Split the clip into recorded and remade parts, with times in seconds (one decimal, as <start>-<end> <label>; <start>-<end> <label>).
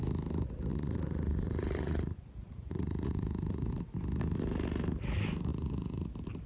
0.0-0.7 recorded; 0.7-3.7 remade; 3.7-5.5 recorded; 5.5-6.1 remade; 6.1-6.5 recorded